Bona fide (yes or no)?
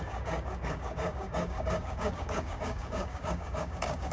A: no